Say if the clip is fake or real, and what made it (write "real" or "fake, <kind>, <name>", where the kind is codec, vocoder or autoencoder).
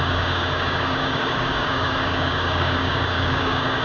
fake, codec, DAC